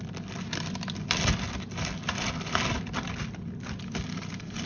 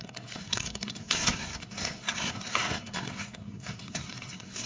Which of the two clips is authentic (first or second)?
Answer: first